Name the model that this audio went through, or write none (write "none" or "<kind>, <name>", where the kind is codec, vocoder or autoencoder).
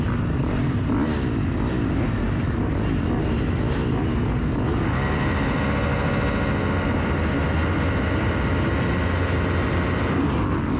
none